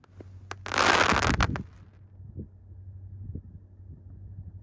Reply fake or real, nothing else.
real